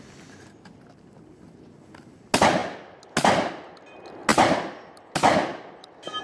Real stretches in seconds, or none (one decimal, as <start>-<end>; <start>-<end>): 0.0-6.2